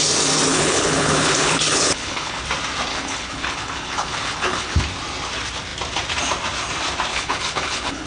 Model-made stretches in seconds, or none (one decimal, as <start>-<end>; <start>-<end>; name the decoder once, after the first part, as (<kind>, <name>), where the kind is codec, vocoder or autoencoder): 0.5-2.4 (codec, HILCodec); 2.9-4.8; 7.1-8.1